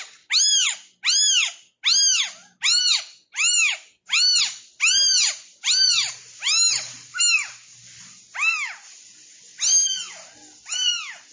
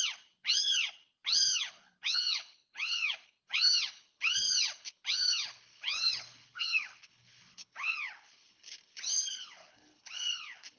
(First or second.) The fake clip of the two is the second